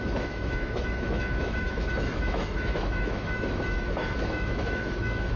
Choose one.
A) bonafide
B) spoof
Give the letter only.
B